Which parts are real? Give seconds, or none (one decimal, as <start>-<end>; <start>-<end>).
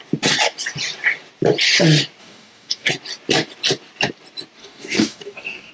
0.0-2.2; 2.9-4.6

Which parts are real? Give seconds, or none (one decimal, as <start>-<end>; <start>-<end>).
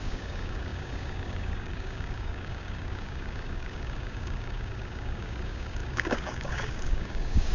none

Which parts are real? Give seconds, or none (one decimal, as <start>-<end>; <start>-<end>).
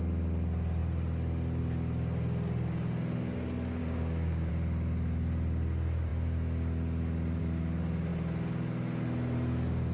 0.0-3.8; 4.5-9.9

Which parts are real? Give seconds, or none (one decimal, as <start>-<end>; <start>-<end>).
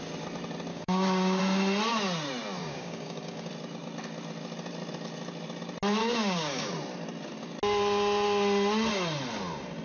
0.0-0.7; 1.4-2.6; 3.5-6.0; 6.7-9.8